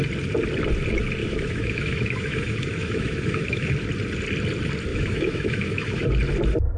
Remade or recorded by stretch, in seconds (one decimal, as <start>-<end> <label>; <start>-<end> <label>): 0.0-1.2 recorded; 1.2-3.7 remade; 3.7-4.9 recorded; 4.9-6.0 remade; 6.0-6.8 recorded